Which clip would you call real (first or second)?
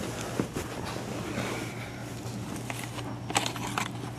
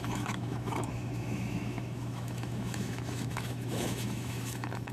first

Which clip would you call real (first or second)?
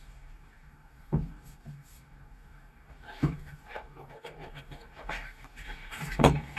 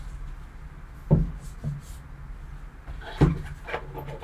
second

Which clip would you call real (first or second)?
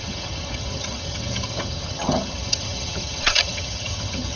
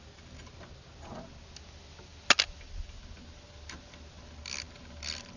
second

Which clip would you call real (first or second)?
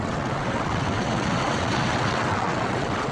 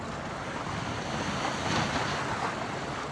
second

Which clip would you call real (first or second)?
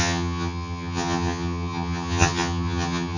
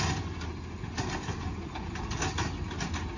second